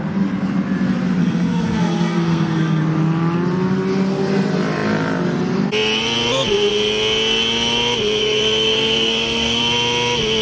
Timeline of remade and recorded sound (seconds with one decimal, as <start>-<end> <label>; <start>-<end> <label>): 0.0-1.2 recorded; 1.2-2.8 remade; 2.8-8.2 recorded; 8.2-9.6 remade; 9.6-10.4 recorded